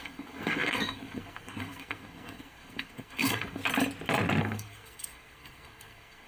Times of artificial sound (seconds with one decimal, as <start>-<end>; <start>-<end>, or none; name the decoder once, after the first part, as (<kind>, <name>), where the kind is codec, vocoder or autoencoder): 0.0-3.6 (codec, SNAC); 4.4-6.3